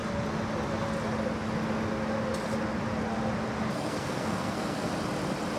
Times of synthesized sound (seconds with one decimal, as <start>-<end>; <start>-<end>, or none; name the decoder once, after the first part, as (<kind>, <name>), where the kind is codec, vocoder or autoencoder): 3.7-4.9 (codec, SNAC)